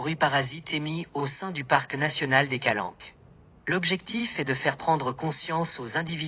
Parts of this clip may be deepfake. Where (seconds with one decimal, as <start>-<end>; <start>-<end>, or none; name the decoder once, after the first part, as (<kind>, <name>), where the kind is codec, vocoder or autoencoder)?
1.2-3.7 (vocoder, Vocos); 4.2-4.8